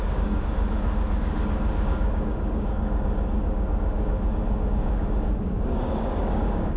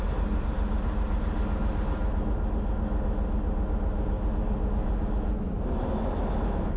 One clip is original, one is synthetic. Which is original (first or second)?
second